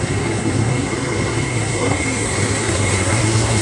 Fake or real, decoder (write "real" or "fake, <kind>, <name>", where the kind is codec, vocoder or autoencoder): fake, codec, SNAC